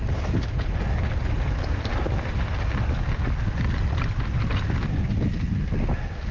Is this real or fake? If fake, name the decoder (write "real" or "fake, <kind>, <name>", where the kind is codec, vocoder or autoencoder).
real